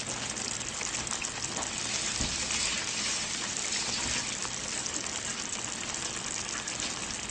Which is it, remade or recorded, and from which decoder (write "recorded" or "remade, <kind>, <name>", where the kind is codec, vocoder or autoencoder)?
recorded